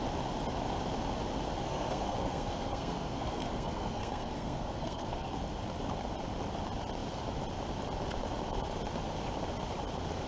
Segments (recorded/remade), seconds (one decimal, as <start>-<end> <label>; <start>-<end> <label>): 0.0-1.6 recorded; 1.6-5.4 remade; 5.4-10.3 recorded